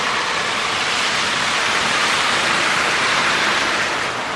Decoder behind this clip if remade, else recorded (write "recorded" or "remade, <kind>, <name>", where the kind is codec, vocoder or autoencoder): remade, vocoder, BigVGAN v2